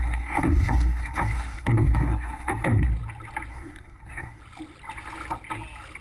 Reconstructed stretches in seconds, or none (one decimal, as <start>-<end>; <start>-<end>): 0.0-2.9; 3.5-4.4